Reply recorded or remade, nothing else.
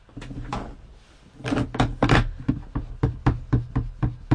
recorded